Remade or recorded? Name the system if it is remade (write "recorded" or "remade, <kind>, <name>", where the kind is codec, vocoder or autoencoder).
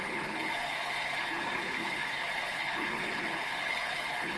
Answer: remade, codec, HILCodec